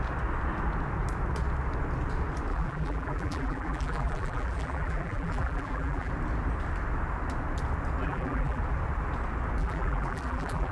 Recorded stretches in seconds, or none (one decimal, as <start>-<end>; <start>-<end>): 0.0-2.5; 6.1-8.0; 8.6-9.6